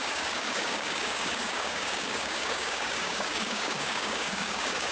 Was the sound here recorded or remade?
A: remade